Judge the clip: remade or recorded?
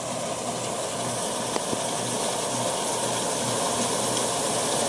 recorded